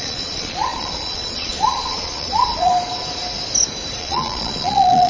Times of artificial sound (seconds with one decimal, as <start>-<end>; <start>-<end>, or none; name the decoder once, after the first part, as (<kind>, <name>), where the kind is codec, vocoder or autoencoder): 0.0-2.7 (vocoder, Vocos); 4.0-5.1